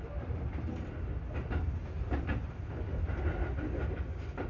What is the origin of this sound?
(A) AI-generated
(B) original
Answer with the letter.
B